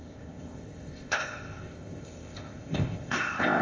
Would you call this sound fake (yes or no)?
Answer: yes